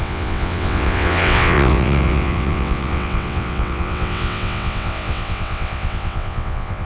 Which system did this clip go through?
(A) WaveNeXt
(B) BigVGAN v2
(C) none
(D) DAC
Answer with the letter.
A